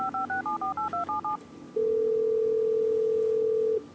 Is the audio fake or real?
real